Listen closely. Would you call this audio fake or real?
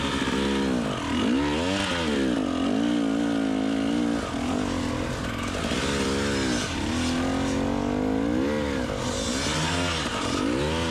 real